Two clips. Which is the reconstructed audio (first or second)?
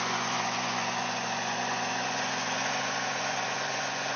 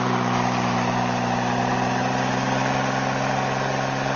first